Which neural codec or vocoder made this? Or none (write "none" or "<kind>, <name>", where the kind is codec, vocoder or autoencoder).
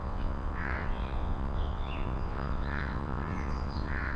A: vocoder, WaveNeXt